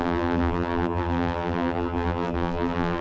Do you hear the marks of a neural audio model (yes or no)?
yes